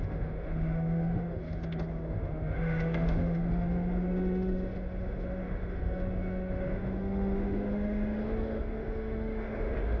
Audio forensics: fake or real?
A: fake